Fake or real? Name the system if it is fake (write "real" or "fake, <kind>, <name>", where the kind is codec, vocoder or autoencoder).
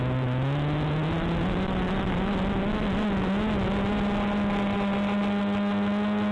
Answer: real